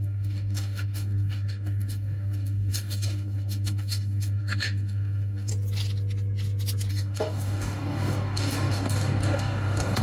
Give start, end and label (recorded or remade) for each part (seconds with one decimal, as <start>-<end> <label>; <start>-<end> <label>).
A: 0.0-5.5 remade; 5.5-6.9 recorded; 6.9-10.0 remade